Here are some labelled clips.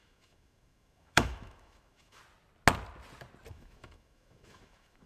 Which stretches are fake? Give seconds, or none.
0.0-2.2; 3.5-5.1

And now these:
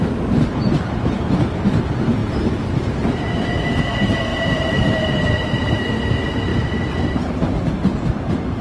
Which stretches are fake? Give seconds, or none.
2.2-3.8; 4.3-5.9; 6.5-7.8

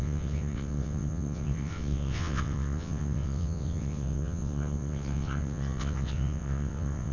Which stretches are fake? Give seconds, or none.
0.0-7.1

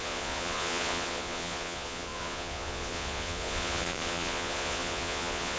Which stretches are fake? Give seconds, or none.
0.0-5.6